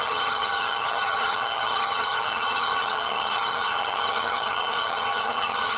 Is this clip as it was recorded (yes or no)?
no